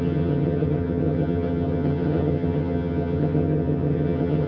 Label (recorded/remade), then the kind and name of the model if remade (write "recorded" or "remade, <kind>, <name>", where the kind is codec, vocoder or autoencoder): remade, vocoder, HiFi-GAN